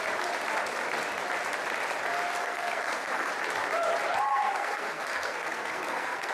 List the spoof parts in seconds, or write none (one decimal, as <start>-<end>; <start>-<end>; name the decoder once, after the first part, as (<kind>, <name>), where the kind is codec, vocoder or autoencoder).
2.4-3.3 (codec, SNAC); 4.3-6.3